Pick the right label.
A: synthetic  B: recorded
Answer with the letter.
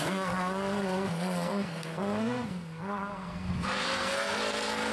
A